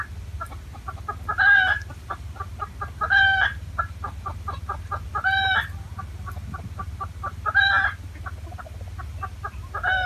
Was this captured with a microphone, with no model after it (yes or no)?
yes